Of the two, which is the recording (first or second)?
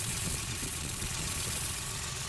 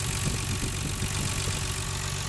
second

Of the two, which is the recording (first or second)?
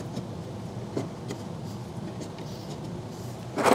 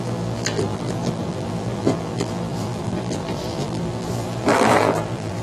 first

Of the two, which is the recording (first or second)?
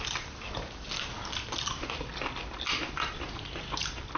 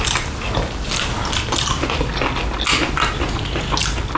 second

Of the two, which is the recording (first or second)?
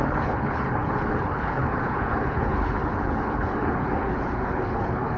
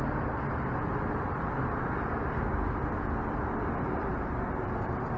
second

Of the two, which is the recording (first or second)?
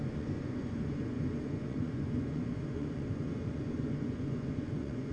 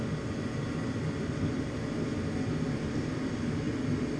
second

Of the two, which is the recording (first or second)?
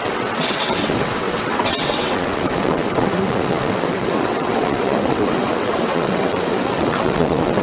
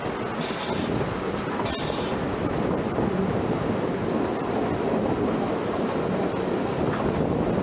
second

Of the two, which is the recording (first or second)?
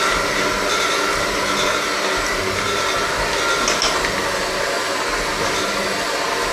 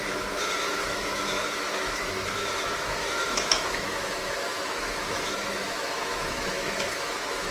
first